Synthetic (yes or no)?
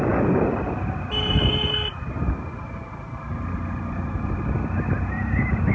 no